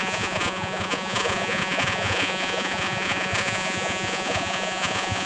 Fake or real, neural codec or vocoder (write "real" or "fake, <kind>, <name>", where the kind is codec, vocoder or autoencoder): fake, vocoder, Vocos